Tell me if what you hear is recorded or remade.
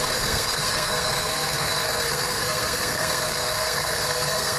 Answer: remade